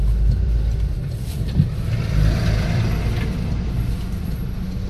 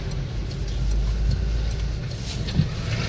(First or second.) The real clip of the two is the second